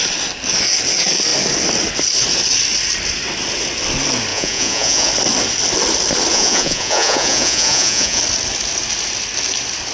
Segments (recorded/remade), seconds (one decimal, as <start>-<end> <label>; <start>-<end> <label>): 0.0-4.3 recorded; 4.3-5.1 remade; 5.1-6.3 recorded; 6.3-8.2 remade; 8.2-9.9 recorded